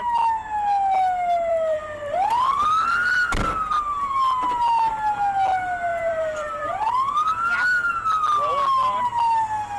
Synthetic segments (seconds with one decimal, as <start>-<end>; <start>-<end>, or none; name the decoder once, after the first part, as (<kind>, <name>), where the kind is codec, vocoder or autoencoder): 1.5-2.5 (vocoder, BigVGAN v2); 5.9-7.9